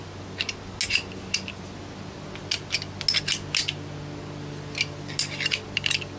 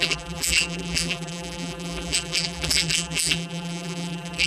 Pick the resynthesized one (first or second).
second